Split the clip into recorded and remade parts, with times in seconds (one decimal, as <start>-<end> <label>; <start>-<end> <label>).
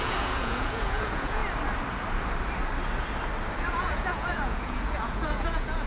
0.0-1.4 remade; 1.4-3.7 recorded; 3.7-5.9 remade